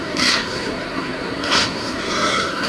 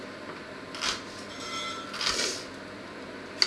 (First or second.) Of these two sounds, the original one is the second